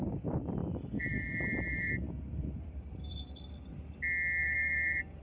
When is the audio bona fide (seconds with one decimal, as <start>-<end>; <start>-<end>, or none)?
0.0-0.6; 3.7-4.4